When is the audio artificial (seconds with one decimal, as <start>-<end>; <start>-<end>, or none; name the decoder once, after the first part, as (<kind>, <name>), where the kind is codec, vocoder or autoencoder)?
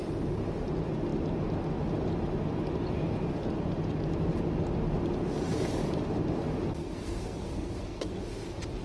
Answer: 6.8-8.2 (codec, SNAC)